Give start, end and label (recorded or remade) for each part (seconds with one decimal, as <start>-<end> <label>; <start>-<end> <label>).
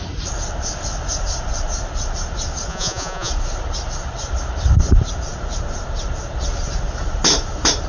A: 0.0-2.7 recorded; 2.7-3.3 remade; 3.3-7.9 recorded